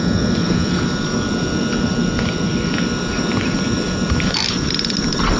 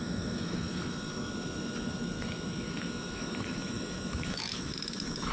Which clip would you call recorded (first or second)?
first